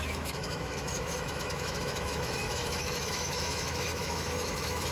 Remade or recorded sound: remade